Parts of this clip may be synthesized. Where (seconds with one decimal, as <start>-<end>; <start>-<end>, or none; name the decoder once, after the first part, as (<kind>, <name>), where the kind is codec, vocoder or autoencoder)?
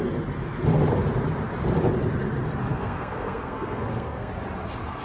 2.7-4.3 (codec, SNAC)